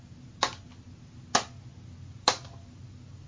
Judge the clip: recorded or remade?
recorded